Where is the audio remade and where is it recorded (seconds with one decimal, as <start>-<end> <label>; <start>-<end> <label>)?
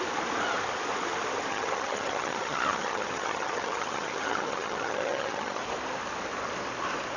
0.0-1.5 recorded; 1.5-5.6 remade; 5.6-7.2 recorded